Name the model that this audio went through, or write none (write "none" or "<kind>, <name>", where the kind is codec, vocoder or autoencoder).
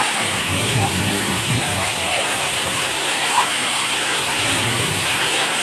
codec, SNAC